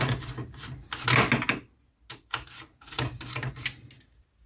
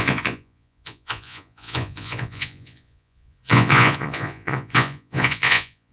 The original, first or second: first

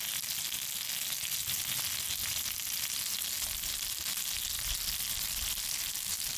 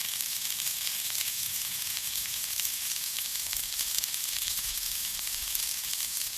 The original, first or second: first